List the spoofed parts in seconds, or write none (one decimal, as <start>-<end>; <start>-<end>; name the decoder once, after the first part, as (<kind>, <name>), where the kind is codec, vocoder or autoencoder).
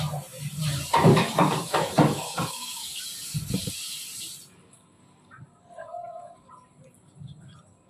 1.1-3.0 (codec, DAC); 5.8-6.5